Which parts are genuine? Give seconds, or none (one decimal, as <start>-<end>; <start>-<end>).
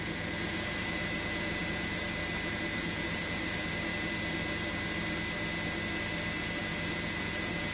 2.2-2.8; 3.9-6.6